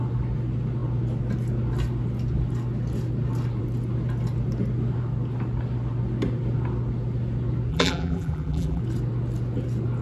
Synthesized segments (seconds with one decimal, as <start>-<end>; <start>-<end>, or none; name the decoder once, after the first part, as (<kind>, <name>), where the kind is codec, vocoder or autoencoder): 7.7-8.8 (vocoder, BigVGAN v2)